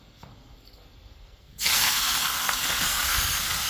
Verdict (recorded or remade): remade